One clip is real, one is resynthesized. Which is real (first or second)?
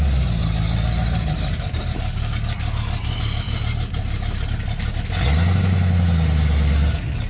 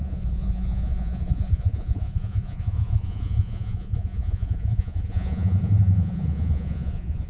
first